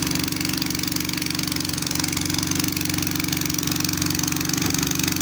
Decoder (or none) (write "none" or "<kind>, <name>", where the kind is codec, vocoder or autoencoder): none